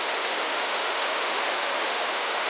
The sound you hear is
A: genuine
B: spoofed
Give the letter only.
B